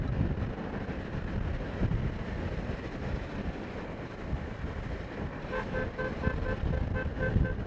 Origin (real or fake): real